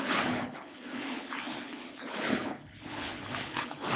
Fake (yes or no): yes